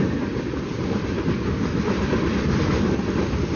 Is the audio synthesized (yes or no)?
no